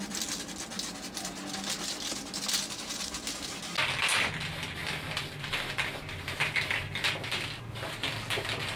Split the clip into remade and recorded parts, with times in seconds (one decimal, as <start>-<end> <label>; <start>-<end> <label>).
0.0-8.8 recorded